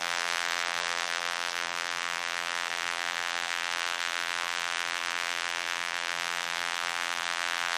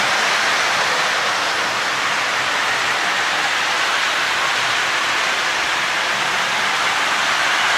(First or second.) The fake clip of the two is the first